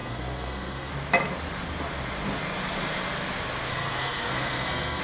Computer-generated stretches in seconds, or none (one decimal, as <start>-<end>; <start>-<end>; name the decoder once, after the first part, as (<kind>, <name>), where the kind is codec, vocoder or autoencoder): 0.0-0.9 (codec, SNAC); 3.7-5.0